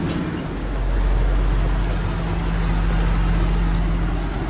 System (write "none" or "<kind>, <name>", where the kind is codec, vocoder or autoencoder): none